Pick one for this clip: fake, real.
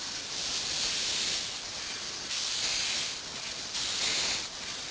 real